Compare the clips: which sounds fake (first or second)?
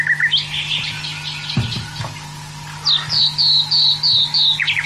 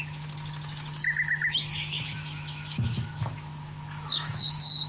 second